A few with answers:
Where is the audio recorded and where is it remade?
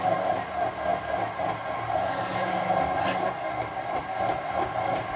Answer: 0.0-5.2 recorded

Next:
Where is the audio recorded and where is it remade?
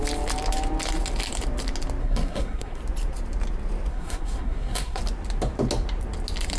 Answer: 0.0-2.0 recorded; 2.0-2.8 remade; 2.8-3.9 recorded; 3.9-5.0 remade; 5.0-6.6 recorded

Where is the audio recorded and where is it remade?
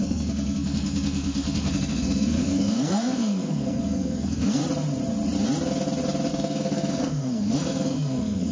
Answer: 0.0-4.6 remade; 4.6-6.3 recorded; 6.3-8.5 remade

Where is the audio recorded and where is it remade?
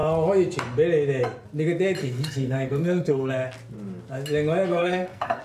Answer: 0.0-2.0 recorded; 2.0-3.3 remade; 3.3-4.7 recorded; 4.7-5.4 remade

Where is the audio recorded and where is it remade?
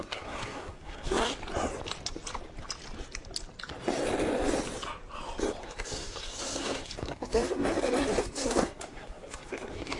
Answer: 0.0-1.3 remade; 1.3-5.6 recorded; 5.6-10.0 remade